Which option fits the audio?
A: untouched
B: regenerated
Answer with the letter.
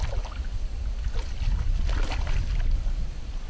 A